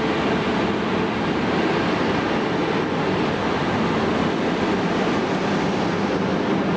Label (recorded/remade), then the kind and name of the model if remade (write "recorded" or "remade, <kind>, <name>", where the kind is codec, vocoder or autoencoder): recorded